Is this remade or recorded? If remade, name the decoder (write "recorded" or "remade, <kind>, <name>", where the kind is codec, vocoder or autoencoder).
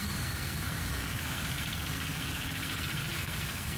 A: remade, codec, SNAC